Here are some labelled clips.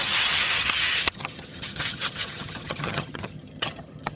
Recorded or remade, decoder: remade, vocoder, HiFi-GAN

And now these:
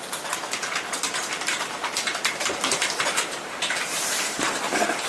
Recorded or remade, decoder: remade, vocoder, BigVGAN v2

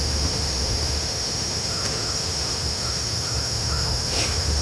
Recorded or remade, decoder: remade, autoencoder, DAC-VAE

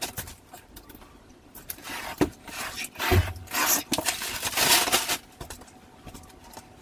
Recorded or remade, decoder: recorded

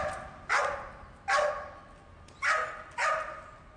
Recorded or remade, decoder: recorded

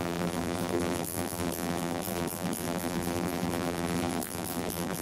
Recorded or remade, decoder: remade, vocoder, BigVGAN v2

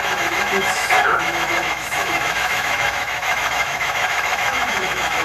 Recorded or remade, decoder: remade, autoencoder, DAC-VAE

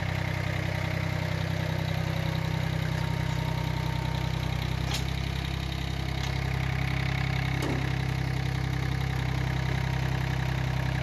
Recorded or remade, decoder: recorded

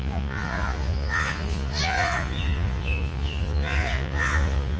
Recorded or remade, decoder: remade, vocoder, Vocos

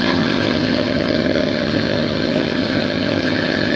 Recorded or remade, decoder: remade, vocoder, HiFi-GAN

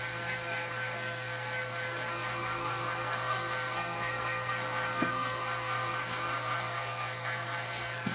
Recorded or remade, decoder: remade, codec, SNAC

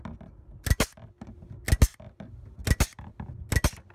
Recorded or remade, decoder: recorded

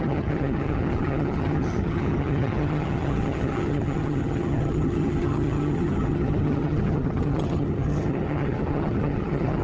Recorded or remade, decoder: remade, vocoder, HiFi-GAN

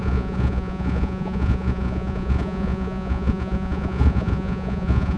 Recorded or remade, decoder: remade, vocoder, Vocos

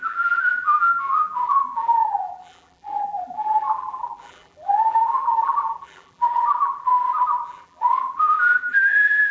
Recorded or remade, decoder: remade, vocoder, BigVGAN v2